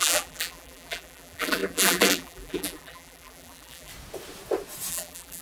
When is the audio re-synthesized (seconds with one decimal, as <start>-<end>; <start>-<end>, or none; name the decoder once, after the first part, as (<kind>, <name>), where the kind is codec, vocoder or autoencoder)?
0.0-3.9 (vocoder, BigVGAN v2); 4.9-5.4